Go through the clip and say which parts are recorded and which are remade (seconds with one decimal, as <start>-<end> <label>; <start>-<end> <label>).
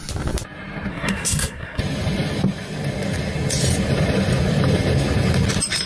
0.0-0.9 recorded; 0.9-1.8 remade; 1.8-5.9 recorded